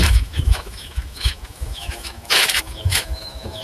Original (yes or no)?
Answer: no